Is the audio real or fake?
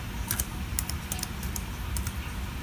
real